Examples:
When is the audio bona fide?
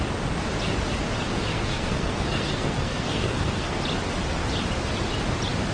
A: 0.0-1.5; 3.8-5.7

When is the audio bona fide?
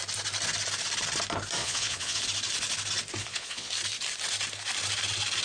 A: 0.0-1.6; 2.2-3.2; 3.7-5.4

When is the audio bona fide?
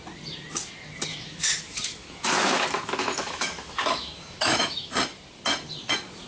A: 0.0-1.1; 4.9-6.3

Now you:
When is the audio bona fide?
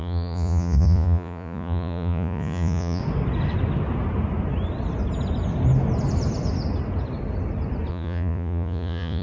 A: 3.0-7.9